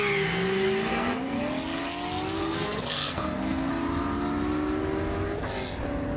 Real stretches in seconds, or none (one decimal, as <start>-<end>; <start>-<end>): 0.0-0.9; 1.4-2.4; 3.7-6.2